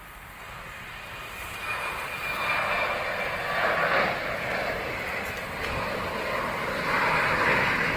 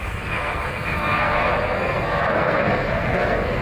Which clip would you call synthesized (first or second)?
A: second